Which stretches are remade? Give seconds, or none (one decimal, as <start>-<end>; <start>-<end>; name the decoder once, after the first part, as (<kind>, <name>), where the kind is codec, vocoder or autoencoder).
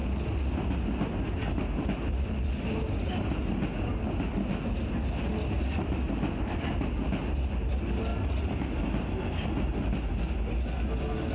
none